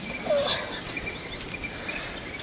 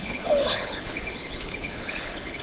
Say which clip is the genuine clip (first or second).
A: first